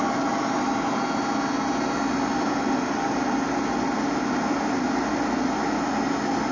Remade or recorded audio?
recorded